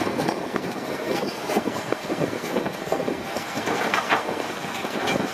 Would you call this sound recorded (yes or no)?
no